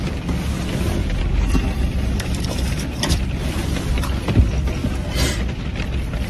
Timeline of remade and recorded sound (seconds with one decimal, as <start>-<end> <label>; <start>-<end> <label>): 0.0-4.8 remade; 4.8-5.4 recorded; 5.4-6.3 remade